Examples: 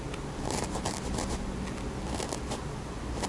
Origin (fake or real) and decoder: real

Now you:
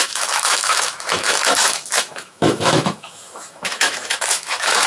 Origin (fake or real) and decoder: fake, autoencoder, DAC-VAE